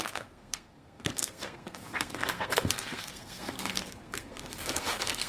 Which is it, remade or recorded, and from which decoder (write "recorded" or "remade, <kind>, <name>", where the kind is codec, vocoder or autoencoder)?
remade, codec, SNAC